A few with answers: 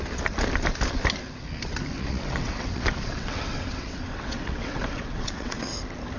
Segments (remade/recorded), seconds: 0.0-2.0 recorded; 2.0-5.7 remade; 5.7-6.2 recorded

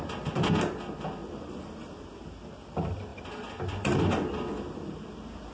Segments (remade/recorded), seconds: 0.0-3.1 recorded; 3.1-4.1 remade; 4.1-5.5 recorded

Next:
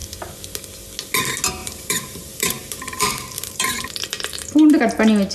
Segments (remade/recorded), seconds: 0.0-1.6 recorded; 1.6-4.8 remade; 4.8-5.3 recorded

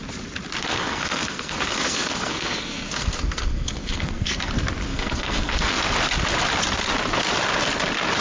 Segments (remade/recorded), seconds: 0.0-0.6 recorded; 0.6-4.5 remade; 4.5-4.9 recorded; 4.9-5.8 remade; 5.8-8.2 recorded